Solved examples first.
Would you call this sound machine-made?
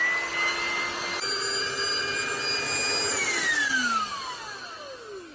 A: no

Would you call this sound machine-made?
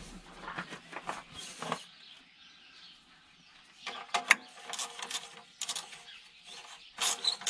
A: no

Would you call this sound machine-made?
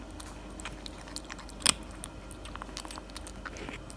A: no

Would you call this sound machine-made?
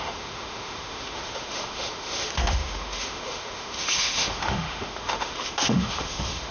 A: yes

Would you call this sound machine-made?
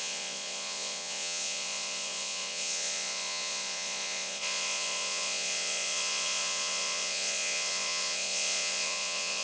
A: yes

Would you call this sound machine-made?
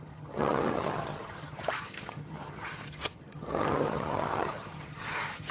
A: yes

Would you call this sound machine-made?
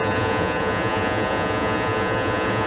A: yes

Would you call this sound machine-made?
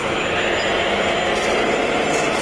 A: no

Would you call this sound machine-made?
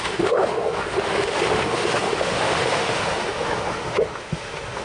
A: yes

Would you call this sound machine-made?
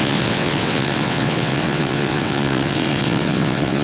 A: yes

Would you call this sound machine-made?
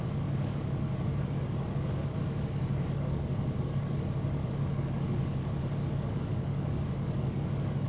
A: yes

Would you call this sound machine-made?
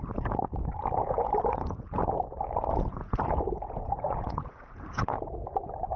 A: yes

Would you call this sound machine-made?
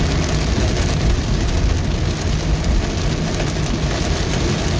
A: no